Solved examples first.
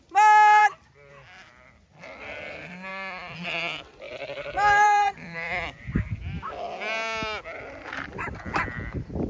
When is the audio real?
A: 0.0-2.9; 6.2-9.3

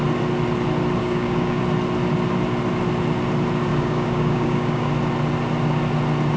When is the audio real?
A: 0.0-1.0; 1.6-3.7; 4.9-6.4

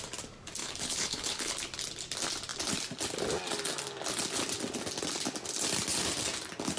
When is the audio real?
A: 0.0-0.6; 1.5-6.8

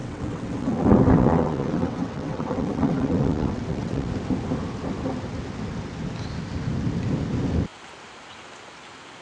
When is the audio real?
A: 4.1-9.2

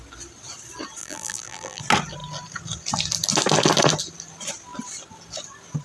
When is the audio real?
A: 0.0-1.0; 1.8-5.8

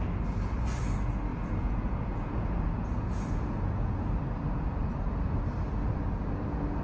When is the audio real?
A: 0.0-1.3; 5.4-6.8